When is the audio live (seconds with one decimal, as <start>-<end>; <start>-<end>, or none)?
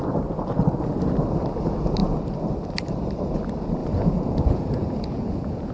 0.0-3.8